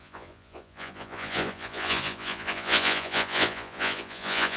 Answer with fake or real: fake